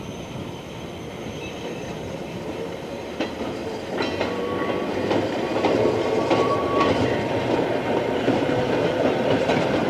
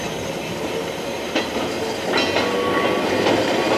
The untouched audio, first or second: second